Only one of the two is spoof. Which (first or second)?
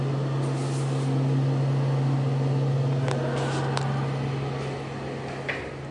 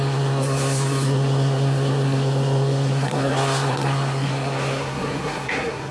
second